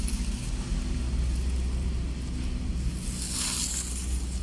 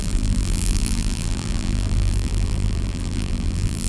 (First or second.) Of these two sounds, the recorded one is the first